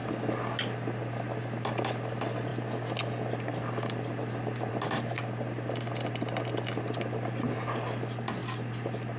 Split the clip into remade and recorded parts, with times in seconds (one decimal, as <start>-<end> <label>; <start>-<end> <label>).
0.0-9.2 recorded